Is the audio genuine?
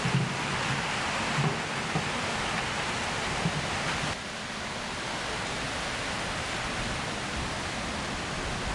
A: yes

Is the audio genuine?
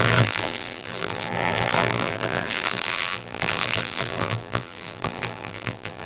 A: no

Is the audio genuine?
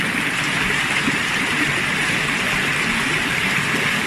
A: yes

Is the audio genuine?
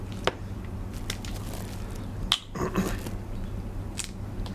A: yes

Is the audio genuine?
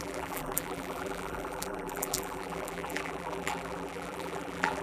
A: no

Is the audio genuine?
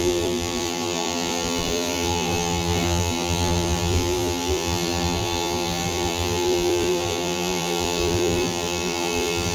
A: no